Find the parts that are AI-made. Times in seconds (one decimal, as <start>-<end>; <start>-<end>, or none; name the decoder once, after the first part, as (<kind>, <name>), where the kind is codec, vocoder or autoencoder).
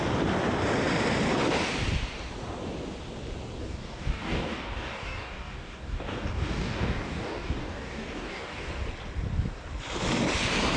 3.6-8.7 (codec, DAC)